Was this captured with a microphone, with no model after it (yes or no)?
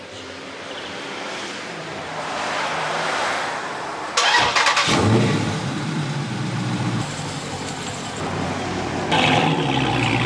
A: no